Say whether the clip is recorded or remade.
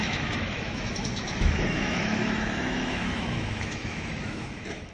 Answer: remade